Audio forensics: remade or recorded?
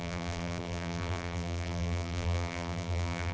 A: remade